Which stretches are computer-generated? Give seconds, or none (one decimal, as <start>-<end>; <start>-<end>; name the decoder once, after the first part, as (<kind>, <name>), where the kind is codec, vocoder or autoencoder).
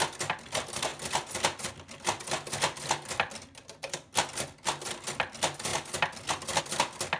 none